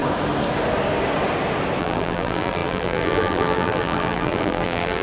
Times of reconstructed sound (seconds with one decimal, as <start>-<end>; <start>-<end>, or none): 1.8-5.0